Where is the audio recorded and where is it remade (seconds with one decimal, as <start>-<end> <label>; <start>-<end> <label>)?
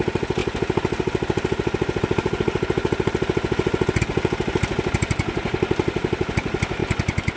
0.0-7.4 recorded